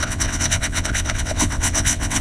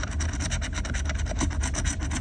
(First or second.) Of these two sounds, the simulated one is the first